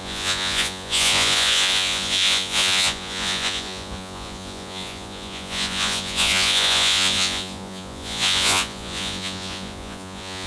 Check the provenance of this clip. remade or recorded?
remade